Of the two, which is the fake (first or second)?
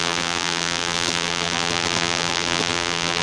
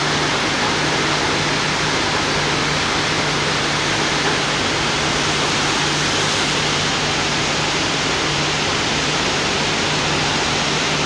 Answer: first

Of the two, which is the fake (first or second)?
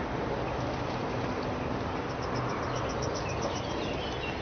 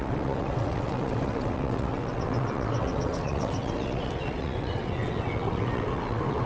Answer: second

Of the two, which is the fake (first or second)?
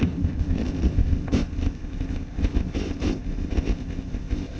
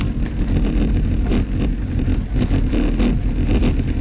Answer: first